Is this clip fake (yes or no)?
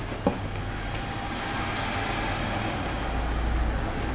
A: no